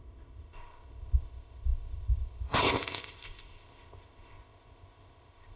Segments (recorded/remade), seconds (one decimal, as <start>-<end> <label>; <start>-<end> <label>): 0.0-5.6 remade